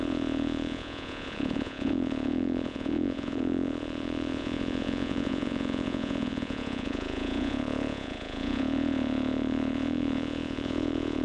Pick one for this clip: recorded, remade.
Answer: remade